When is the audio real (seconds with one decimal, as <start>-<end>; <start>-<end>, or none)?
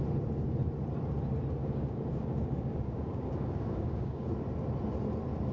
0.0-1.6; 4.3-5.5